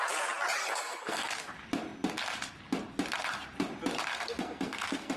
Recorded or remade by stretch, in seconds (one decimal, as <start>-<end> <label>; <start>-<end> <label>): 0.0-0.6 recorded; 0.6-1.3 remade; 1.3-4.1 recorded; 4.1-5.2 remade